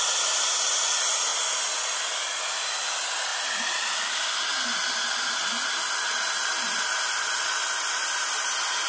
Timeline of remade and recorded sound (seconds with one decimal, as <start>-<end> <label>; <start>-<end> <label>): 0.0-8.9 recorded